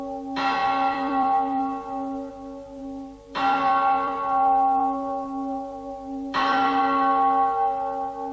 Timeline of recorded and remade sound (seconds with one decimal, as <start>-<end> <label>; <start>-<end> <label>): 0.0-0.6 recorded; 0.6-2.3 remade; 2.3-2.8 recorded; 2.8-6.8 remade; 6.8-8.3 recorded